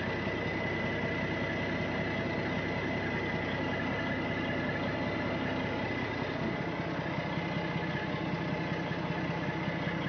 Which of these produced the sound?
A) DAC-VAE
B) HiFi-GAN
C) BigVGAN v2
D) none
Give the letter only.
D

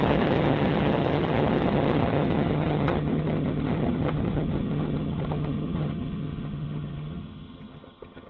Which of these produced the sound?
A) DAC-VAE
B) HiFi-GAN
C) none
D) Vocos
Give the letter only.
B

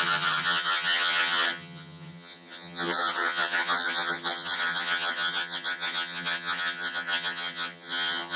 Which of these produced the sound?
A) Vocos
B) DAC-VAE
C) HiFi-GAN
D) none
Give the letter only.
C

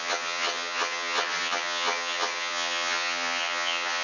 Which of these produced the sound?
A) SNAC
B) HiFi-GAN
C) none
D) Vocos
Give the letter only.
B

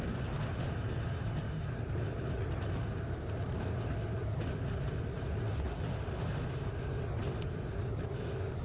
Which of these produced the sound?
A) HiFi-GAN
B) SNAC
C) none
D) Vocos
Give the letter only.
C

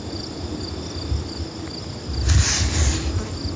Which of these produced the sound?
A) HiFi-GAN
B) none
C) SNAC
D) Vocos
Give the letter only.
B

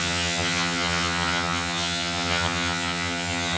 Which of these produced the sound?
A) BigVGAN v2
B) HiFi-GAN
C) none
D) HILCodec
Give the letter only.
B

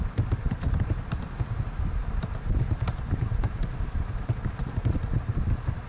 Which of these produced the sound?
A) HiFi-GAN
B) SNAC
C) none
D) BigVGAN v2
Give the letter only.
C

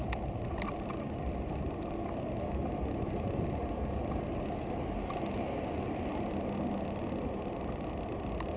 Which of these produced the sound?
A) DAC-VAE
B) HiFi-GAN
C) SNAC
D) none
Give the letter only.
D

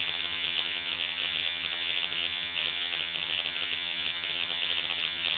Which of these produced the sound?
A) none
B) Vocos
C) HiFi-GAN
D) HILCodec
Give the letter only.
C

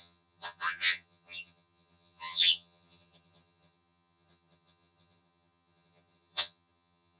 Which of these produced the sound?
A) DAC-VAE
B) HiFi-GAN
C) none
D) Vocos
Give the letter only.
B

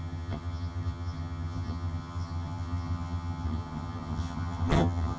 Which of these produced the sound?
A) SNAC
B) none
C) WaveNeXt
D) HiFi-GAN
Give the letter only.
D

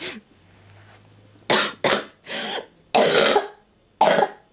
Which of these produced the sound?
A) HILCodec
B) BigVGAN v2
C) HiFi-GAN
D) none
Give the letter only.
D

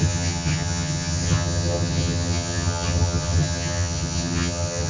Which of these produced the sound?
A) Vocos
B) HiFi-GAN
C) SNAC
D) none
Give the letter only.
B